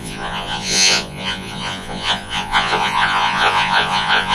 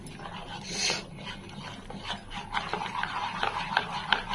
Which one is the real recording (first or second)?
second